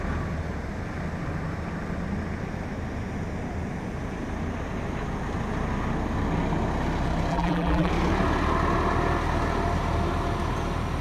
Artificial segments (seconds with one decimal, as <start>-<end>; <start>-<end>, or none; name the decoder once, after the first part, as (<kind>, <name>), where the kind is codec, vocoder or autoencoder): 7.3-7.9 (vocoder, BigVGAN v2)